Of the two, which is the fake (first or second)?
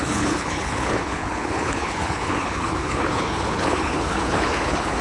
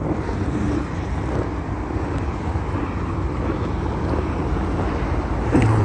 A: first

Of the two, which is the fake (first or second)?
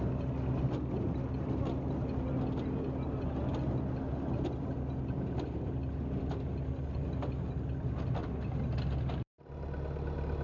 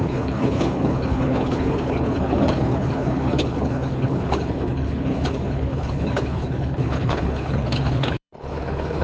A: second